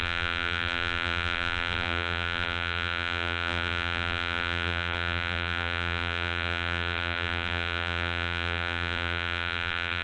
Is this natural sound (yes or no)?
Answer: no